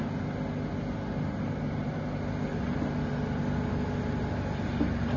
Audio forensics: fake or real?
real